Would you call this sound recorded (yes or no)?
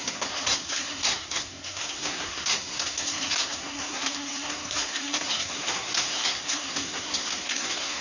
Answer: no